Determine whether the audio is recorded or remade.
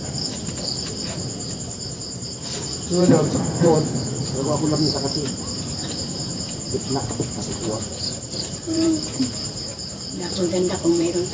remade